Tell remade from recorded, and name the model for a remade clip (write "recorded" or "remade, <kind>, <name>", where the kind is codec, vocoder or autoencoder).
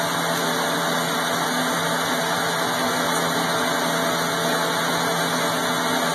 recorded